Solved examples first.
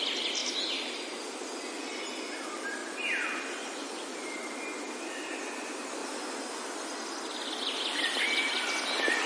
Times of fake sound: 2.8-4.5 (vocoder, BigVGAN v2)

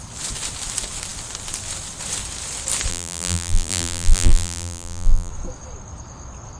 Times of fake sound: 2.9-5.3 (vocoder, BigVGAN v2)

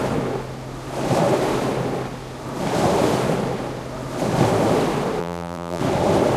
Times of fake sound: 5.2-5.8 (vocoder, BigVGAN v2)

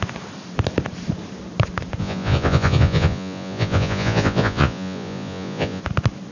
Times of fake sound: 2.0-5.8 (vocoder, Vocos)

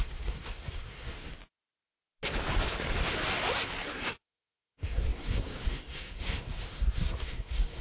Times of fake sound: 0.0-1.3 (codec, SNAC); 3.9-7.8